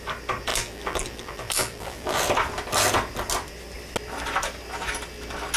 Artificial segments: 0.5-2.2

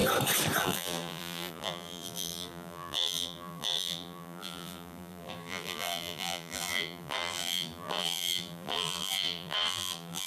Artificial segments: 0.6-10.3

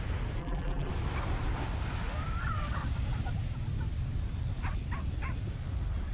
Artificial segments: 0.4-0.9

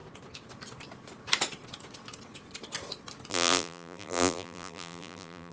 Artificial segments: 3.3-5.5

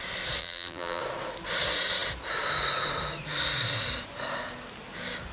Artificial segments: 0.4-1.0

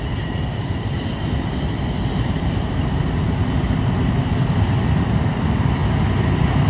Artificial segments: 0.0-5.8; 6.3-6.7

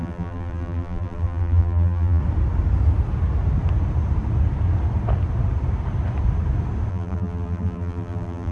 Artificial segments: 0.0-2.2; 6.9-8.5